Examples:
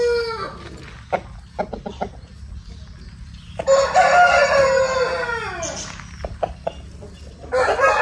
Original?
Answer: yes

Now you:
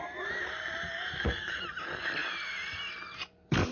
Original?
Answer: yes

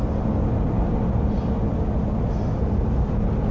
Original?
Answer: yes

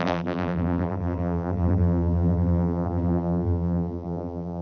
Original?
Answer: no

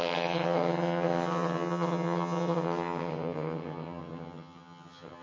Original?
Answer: no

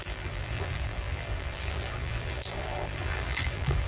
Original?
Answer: no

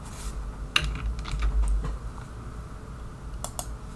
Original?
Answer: yes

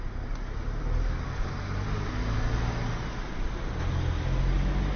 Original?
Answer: yes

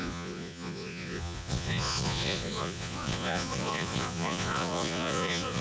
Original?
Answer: no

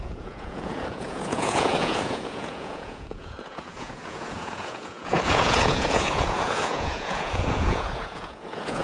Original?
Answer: no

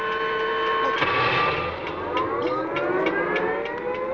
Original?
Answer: yes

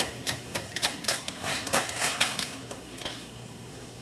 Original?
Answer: no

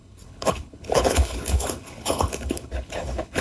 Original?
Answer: no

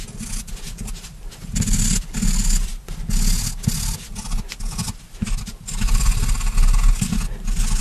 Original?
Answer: yes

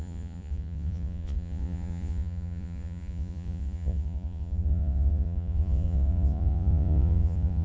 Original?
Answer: no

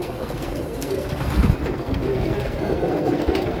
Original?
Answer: no